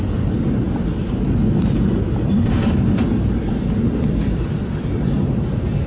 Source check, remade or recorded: recorded